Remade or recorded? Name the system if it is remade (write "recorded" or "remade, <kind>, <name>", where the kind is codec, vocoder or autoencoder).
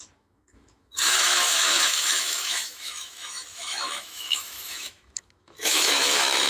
remade, autoencoder, DAC-VAE